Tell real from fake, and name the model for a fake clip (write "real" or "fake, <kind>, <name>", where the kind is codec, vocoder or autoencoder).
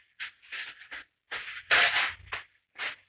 real